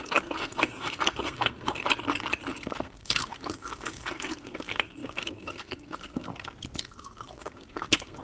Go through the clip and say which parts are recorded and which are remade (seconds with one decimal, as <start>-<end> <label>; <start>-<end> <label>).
0.0-1.8 remade; 1.8-2.8 recorded; 2.8-6.3 remade; 6.3-6.8 recorded; 6.8-8.2 remade